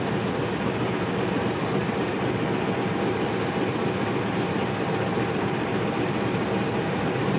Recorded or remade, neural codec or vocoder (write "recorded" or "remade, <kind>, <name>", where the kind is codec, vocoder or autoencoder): recorded